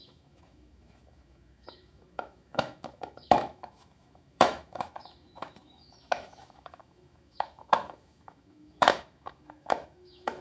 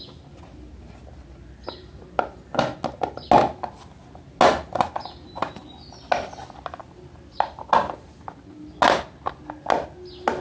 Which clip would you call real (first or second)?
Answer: second